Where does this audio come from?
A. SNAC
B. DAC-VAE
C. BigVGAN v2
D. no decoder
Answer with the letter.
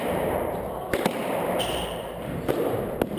C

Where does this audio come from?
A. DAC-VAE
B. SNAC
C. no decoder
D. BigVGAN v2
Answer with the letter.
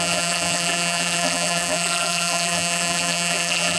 D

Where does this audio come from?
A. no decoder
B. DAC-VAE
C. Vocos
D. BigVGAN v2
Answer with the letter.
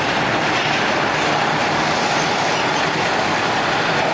A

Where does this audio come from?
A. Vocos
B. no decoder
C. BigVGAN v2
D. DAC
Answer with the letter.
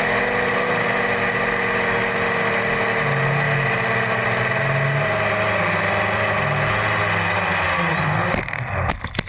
B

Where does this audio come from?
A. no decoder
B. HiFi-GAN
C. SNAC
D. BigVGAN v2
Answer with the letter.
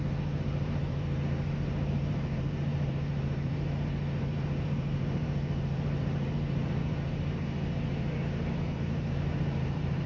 D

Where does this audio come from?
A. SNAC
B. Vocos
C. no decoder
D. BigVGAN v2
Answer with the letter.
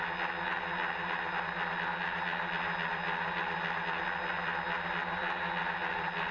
C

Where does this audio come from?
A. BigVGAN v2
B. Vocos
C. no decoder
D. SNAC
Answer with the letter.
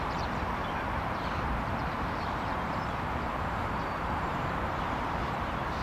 A